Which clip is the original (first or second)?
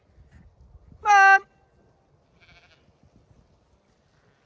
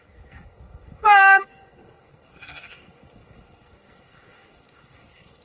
first